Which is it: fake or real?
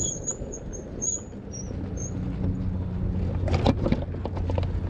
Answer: real